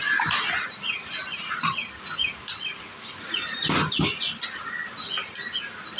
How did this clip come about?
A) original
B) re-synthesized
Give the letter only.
A